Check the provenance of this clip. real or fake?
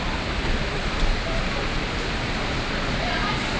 real